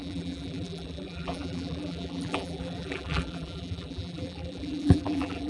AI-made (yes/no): yes